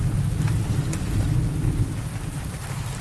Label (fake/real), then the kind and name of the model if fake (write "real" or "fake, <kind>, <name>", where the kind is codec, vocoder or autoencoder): real